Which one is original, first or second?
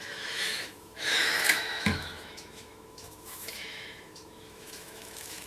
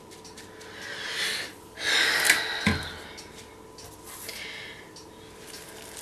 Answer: second